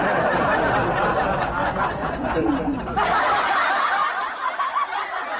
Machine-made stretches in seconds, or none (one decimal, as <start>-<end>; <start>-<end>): 1.6-2.5